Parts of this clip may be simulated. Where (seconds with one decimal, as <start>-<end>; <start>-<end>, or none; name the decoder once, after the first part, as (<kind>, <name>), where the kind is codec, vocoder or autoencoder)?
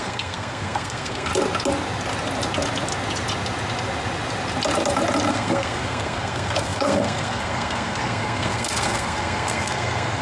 0.0-1.3 (codec, SNAC); 5.3-10.2